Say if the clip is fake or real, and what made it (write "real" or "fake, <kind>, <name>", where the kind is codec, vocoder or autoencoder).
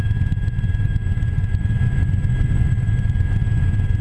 fake, vocoder, Vocos